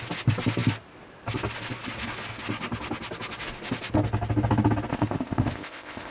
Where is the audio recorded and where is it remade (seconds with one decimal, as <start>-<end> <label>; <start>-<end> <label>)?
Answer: 0.0-4.9 recorded; 4.9-6.1 remade